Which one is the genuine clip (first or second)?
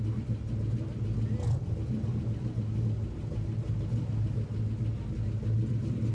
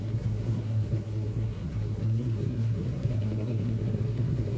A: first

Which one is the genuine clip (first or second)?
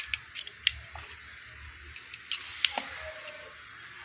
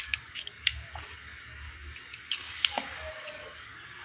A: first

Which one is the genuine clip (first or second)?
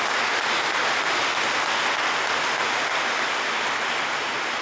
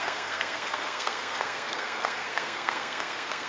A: first